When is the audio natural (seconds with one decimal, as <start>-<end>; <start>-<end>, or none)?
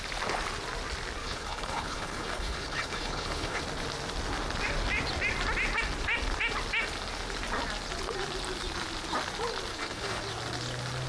0.0-1.2; 3.6-9.7; 10.2-11.1